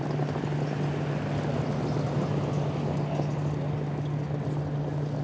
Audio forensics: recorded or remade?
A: recorded